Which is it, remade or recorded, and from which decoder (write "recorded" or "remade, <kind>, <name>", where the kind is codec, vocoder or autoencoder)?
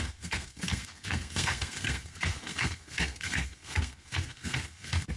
remade, codec, SNAC